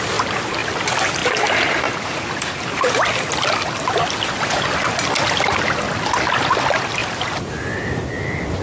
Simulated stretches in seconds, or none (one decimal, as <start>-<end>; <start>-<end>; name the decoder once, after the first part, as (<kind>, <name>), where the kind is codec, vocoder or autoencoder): none